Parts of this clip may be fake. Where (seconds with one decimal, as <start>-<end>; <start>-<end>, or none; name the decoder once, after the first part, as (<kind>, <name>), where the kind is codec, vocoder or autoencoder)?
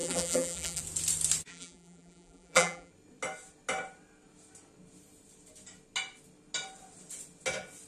0.0-0.8 (vocoder, BigVGAN v2); 1.5-2.9